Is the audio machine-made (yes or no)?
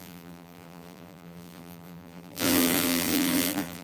yes